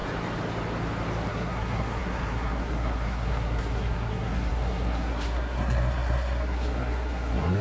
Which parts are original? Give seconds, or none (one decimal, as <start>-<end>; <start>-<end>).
0.0-1.3